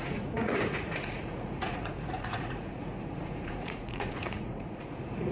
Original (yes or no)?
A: no